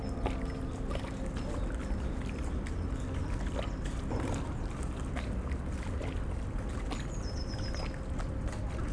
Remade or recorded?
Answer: recorded